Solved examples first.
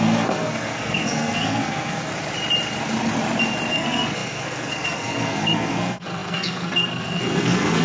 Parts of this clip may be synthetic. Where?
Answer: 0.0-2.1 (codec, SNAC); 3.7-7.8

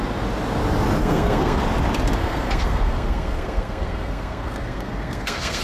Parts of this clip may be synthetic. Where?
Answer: 1.0-1.6 (codec, SNAC); 2.2-5.6

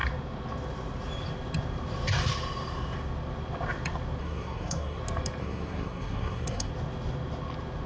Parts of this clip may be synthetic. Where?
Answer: 4.2-5.0 (codec, SNAC); 5.4-6.7

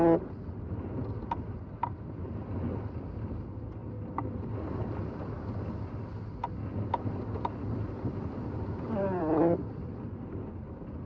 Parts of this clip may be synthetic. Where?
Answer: none

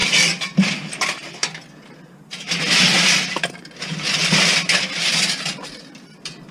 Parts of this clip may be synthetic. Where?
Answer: none

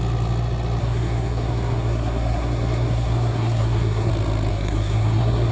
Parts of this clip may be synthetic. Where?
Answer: 0.8-4.1 (codec, SNAC); 4.5-5.5

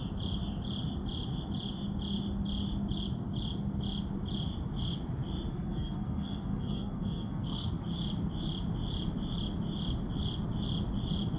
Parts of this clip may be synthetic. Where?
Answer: 5.5-7.8 (codec, SNAC)